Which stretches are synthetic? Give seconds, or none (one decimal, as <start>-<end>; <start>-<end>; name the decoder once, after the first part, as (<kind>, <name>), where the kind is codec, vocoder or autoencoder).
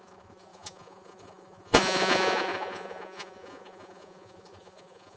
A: 0.0-5.2 (vocoder, Vocos)